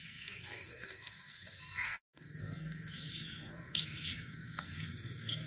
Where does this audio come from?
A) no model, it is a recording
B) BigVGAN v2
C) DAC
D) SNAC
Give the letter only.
D